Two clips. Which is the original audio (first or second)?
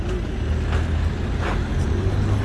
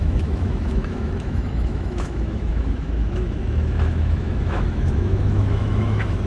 first